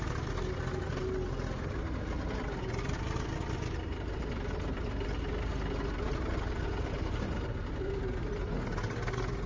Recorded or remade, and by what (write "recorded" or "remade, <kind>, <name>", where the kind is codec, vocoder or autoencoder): recorded